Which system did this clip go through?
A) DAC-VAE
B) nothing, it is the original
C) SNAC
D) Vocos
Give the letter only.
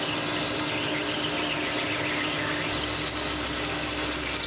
B